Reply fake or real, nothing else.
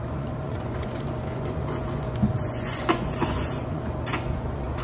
fake